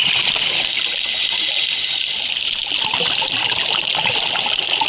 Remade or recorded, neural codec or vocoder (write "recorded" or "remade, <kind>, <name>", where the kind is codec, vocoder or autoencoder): recorded